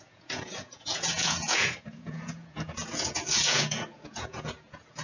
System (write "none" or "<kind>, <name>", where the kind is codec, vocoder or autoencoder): vocoder, Vocos